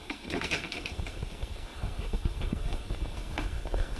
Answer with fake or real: fake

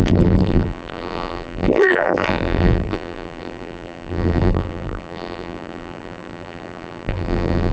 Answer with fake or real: fake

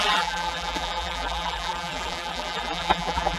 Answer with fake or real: fake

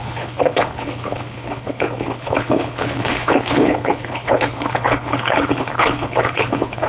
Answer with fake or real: fake